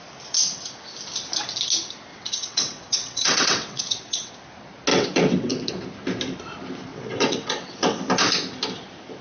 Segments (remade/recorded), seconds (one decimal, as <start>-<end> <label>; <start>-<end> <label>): 0.0-2.1 recorded; 2.1-4.3 remade; 4.3-4.9 recorded; 4.9-5.7 remade; 5.7-6.9 recorded; 6.9-8.0 remade; 8.0-9.2 recorded